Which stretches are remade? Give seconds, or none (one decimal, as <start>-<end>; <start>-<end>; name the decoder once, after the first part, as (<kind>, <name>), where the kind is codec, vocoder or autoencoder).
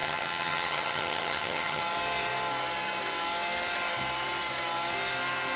0.0-1.8 (vocoder, HiFi-GAN)